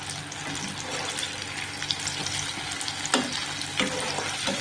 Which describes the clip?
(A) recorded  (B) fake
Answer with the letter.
A